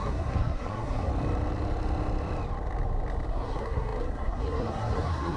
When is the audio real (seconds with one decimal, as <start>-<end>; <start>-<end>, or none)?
1.1-3.3